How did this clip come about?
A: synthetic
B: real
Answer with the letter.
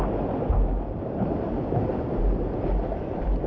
B